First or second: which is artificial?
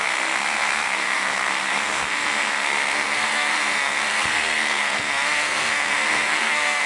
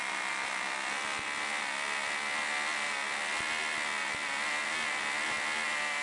first